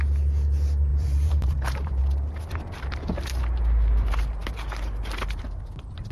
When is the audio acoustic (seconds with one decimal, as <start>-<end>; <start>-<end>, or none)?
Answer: 0.0-0.9; 2.0-6.1